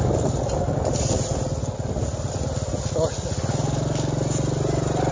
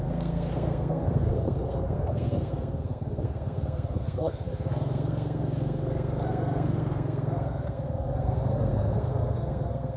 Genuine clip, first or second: first